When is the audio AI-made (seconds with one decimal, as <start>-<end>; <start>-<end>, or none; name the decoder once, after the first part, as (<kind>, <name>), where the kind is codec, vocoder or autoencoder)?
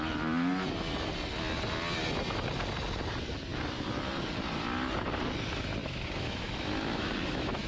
5.8-7.7 (autoencoder, DAC-VAE)